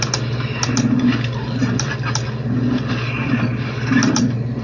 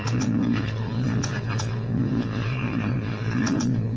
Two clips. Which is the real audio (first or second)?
first